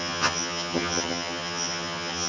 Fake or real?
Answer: fake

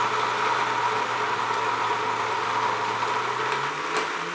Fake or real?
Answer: real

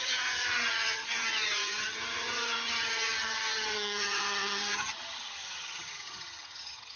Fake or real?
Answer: fake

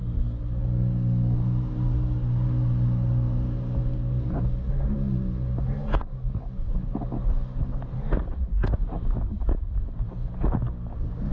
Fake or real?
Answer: real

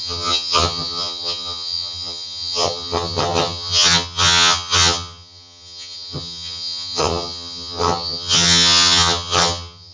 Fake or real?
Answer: fake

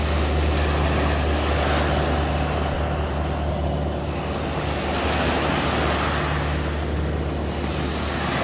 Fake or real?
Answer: real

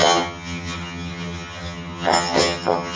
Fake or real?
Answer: fake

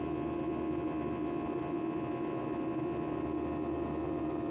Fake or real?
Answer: real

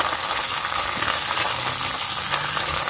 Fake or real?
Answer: real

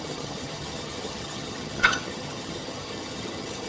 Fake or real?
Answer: fake